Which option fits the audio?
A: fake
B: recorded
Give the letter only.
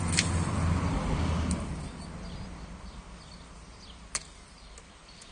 B